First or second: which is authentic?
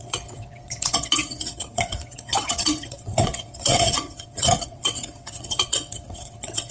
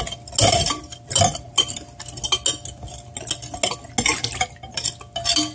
second